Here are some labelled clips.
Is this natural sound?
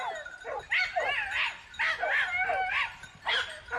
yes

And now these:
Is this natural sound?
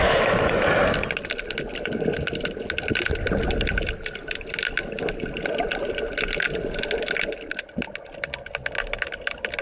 yes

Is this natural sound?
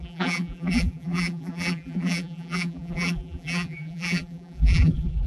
no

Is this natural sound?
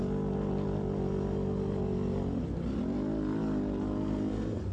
yes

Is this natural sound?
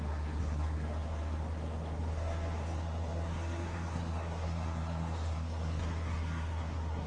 no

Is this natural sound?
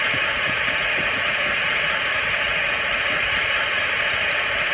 no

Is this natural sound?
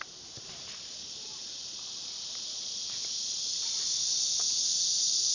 no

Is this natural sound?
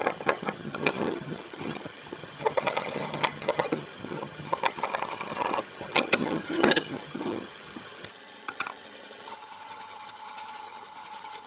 no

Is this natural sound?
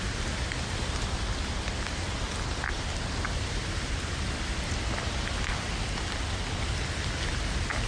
yes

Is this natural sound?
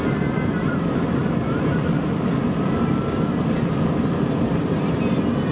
yes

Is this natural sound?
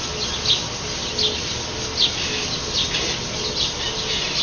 yes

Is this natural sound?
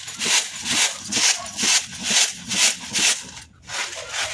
yes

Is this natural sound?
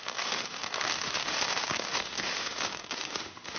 no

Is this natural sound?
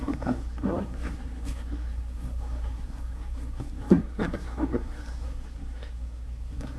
no